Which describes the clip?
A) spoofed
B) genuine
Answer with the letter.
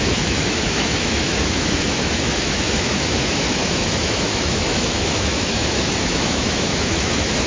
A